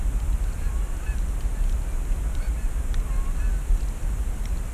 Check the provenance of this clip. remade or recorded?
recorded